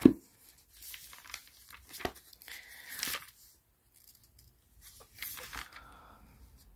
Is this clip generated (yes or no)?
no